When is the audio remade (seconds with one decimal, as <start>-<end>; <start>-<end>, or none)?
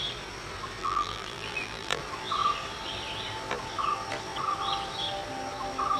0.8-2.0